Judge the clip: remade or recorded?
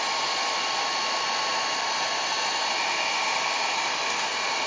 recorded